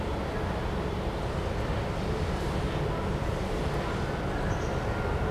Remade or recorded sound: recorded